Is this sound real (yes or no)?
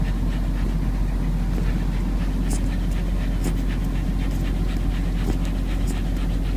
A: yes